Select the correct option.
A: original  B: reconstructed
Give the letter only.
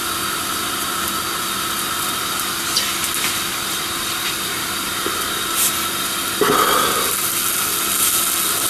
A